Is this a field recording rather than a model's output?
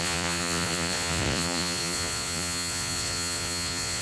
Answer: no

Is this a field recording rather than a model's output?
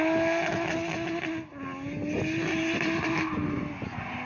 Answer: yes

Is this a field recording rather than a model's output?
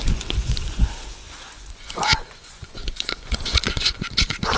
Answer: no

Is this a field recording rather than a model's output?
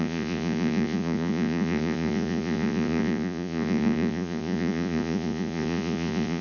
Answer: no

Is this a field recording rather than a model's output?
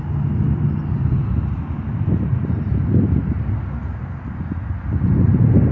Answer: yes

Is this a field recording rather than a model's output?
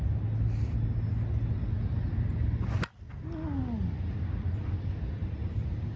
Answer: yes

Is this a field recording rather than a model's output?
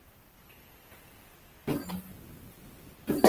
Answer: yes